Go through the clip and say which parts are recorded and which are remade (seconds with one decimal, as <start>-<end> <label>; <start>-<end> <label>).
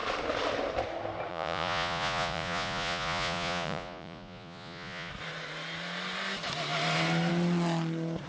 0.0-1.3 recorded; 1.3-5.1 remade; 5.1-8.3 recorded